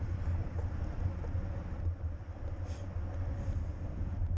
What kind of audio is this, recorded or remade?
recorded